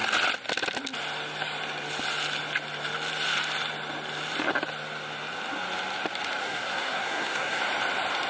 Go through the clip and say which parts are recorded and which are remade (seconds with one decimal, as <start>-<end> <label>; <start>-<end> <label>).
0.0-6.4 recorded; 6.4-7.6 remade; 7.6-8.3 recorded

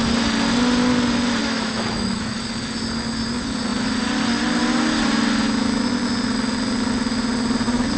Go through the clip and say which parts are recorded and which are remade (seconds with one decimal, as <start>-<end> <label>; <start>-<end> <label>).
0.0-1.4 recorded; 1.4-2.4 remade; 2.4-8.0 recorded

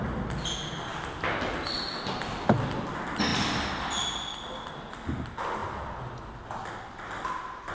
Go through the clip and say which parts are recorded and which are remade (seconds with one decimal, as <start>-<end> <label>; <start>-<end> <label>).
0.0-7.7 recorded

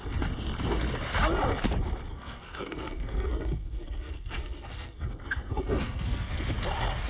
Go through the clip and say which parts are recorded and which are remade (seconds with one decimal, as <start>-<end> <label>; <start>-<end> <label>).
0.0-2.1 recorded; 2.1-6.3 remade; 6.3-7.1 recorded

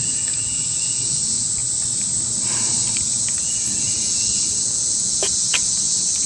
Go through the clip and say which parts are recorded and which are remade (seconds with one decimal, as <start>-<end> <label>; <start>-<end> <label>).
0.0-1.6 remade; 1.6-3.0 recorded; 3.0-6.3 remade

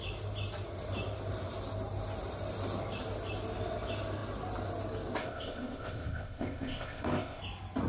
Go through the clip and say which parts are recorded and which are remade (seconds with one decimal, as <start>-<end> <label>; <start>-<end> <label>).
0.0-5.2 recorded; 5.2-7.4 remade; 7.4-7.9 recorded